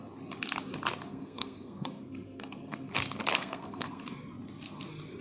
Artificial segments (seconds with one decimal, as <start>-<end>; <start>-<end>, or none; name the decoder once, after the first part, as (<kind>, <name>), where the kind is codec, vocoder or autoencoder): 1.1-2.9 (codec, SNAC); 3.3-4.0